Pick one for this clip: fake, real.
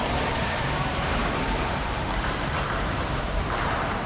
fake